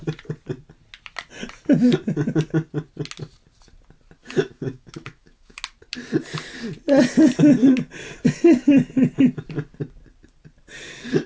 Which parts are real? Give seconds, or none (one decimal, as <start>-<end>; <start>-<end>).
0.0-4.2; 5.6-11.3

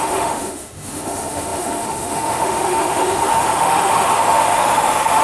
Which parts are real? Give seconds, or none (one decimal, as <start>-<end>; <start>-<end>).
none

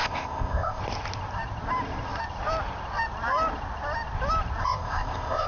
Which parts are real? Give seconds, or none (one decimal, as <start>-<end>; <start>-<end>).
0.8-4.6